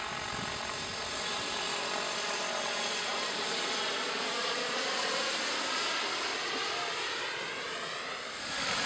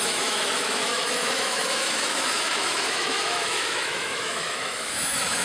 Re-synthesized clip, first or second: second